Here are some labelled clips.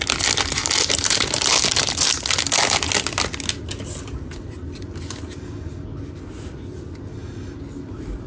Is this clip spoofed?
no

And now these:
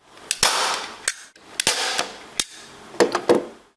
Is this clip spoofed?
no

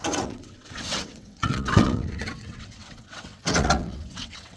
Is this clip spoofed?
yes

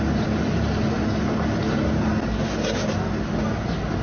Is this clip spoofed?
no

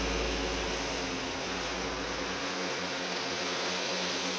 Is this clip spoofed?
no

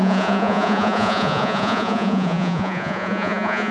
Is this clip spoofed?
yes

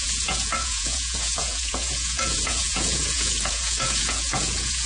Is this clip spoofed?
yes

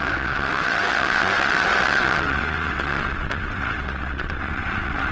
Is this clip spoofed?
yes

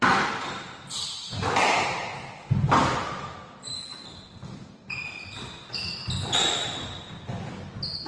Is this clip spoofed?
no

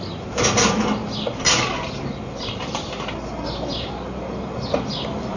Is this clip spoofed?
no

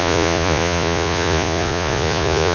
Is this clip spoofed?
yes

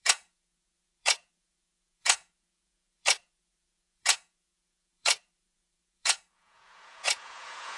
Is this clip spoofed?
yes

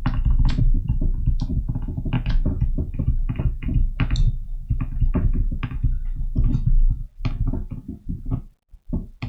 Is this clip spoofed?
no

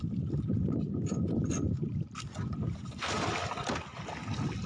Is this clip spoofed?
no